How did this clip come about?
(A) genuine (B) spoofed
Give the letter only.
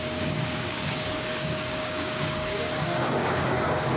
B